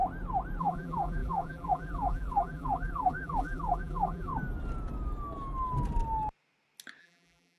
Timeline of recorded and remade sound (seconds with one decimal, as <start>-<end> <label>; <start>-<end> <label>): 0.0-0.6 recorded; 0.6-4.3 remade; 4.3-7.0 recorded; 7.0-7.6 remade